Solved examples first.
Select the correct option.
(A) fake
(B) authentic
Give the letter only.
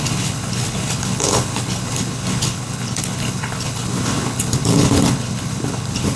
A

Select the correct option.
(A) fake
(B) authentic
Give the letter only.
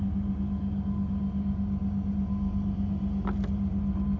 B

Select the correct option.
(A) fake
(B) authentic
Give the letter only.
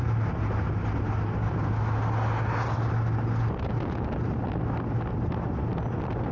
B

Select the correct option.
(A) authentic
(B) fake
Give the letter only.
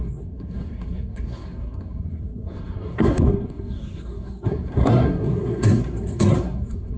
B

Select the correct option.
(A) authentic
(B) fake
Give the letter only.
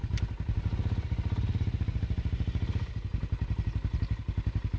A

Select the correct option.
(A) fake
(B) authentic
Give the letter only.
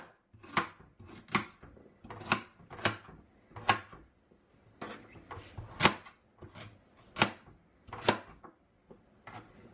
B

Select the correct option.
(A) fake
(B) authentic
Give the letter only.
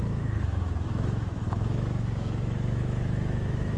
A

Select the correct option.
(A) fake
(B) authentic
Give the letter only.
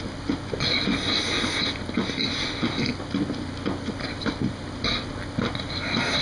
B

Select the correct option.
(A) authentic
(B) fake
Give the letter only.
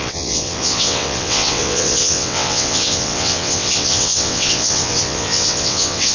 B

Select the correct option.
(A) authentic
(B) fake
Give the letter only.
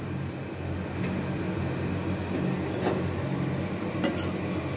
A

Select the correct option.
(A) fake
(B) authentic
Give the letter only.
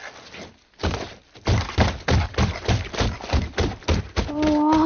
B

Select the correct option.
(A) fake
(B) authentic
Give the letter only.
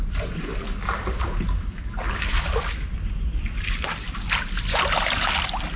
B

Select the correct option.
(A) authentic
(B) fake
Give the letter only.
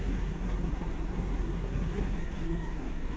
B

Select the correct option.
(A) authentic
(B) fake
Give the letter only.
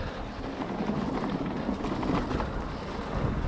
A